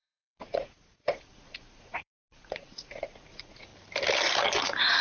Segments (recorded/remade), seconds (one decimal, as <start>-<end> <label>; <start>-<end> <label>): 0.0-3.7 remade; 3.7-5.0 recorded